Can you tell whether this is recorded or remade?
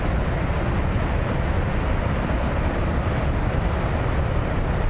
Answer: recorded